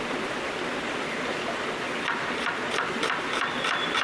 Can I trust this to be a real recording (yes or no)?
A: yes